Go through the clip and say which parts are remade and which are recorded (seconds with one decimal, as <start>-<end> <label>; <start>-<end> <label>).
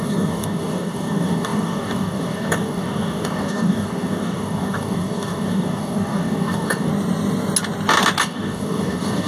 0.0-6.9 remade; 6.9-8.2 recorded; 8.2-9.3 remade